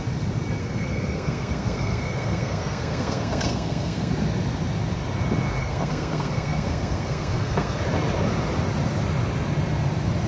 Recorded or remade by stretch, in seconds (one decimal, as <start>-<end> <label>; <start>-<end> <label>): 0.0-0.6 recorded; 0.6-4.1 remade; 4.1-5.6 recorded; 5.6-7.8 remade; 7.8-10.3 recorded